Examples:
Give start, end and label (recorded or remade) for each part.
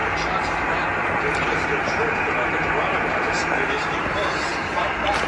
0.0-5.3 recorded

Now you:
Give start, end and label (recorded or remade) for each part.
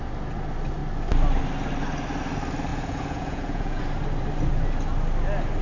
0.0-2.7 recorded; 2.7-3.8 remade; 3.8-5.6 recorded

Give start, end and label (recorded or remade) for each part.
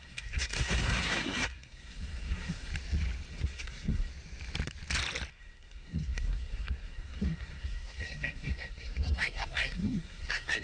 0.0-2.7 remade; 2.7-3.3 recorded; 3.3-4.1 remade; 4.1-5.3 recorded; 5.3-10.6 remade